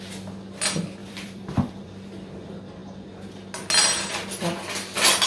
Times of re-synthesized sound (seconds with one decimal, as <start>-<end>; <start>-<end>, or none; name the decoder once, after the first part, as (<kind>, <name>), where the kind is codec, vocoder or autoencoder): 1.0-2.1 (vocoder, BigVGAN v2)